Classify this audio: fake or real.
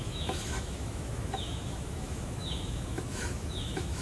fake